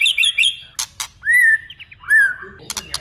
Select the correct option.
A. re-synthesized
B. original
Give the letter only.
B